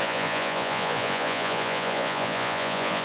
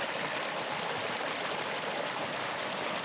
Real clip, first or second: second